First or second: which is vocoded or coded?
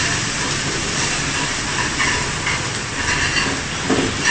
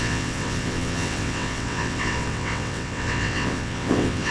second